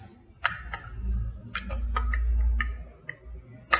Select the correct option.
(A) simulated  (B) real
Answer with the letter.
B